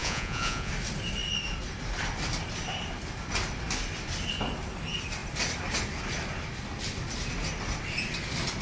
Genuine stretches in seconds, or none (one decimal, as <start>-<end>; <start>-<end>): 0.7-8.6